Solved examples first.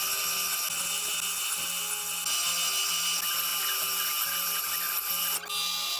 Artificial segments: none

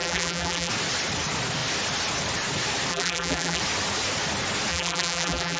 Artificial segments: 0.0-0.7; 2.9-3.6; 4.7-5.6

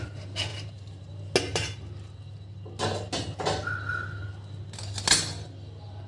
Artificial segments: 0.5-1.1

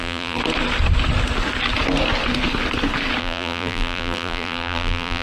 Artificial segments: 0.0-0.4; 3.2-5.2

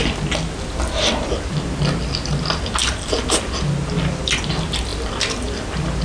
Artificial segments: 2.8-3.5; 4.9-6.0

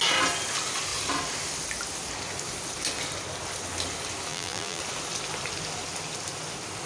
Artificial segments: 4.3-4.8